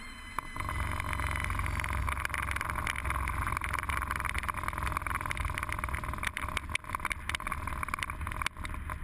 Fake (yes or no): no